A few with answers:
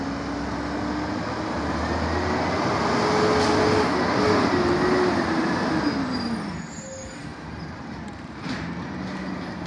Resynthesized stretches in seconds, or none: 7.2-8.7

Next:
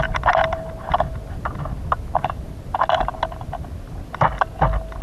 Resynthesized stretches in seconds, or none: none

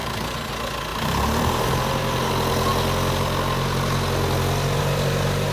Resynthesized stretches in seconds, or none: 0.0-0.5; 0.9-2.3

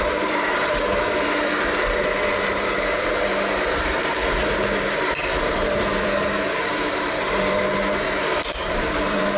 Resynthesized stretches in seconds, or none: 0.0-4.1; 5.4-9.4